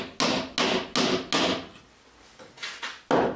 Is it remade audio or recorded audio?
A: recorded